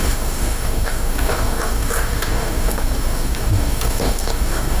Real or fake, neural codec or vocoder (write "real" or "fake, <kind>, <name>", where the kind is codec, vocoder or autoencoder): fake, codec, DAC